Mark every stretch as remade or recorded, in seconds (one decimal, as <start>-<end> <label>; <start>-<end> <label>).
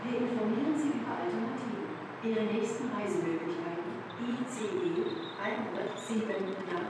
0.0-4.3 recorded; 4.3-4.8 remade; 4.8-5.5 recorded; 5.5-6.9 remade